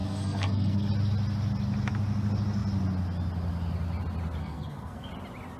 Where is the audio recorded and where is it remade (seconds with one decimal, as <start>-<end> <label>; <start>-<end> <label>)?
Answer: 0.0-0.9 remade; 0.9-4.4 recorded; 4.4-5.1 remade; 5.1-5.6 recorded